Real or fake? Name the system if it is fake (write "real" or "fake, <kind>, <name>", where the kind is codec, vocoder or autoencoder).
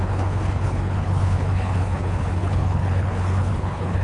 fake, codec, HILCodec